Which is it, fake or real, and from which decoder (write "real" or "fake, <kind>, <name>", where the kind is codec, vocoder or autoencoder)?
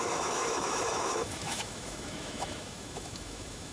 fake, autoencoder, DAC-VAE